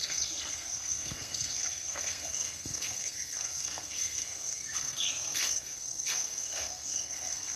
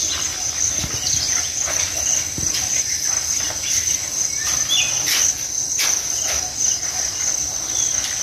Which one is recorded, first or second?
second